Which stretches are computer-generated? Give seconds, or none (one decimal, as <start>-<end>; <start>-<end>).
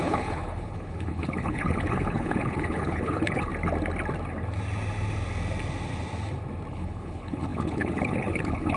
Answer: 0.0-3.5; 6.7-8.8